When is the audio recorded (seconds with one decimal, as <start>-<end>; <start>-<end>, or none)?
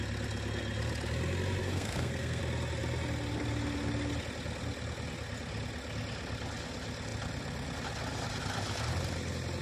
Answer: 0.0-1.6; 2.4-9.6